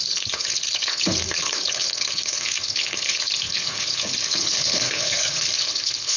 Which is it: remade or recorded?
remade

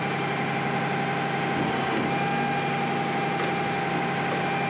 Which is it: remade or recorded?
recorded